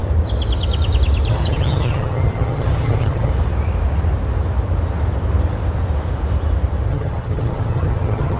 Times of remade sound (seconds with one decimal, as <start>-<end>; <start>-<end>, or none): 1.3-3.3; 6.9-8.4